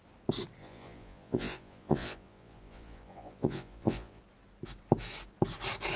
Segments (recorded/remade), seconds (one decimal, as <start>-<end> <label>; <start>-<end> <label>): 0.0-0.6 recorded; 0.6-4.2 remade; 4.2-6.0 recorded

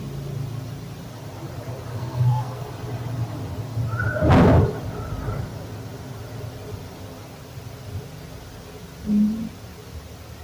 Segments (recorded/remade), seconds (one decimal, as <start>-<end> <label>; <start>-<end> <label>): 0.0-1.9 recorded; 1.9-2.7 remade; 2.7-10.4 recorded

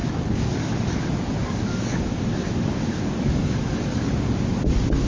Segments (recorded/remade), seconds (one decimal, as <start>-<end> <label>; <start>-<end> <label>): 0.0-0.7 remade; 0.7-1.4 recorded; 1.4-4.0 remade; 4.0-5.1 recorded

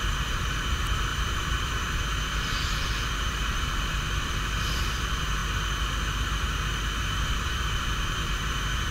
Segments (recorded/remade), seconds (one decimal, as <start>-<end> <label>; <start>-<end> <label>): 0.0-5.4 remade; 5.4-7.0 recorded; 7.0-8.9 remade

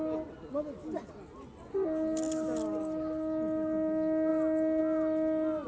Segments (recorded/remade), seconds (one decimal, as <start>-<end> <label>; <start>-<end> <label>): 0.0-5.7 recorded